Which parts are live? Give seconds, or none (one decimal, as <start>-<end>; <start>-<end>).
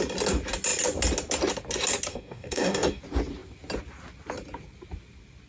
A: 0.0-2.1; 3.0-5.5